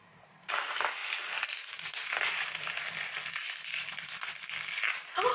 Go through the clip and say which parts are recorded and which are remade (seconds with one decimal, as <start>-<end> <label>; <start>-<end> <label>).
0.0-5.3 recorded